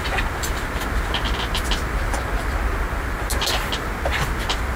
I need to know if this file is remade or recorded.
recorded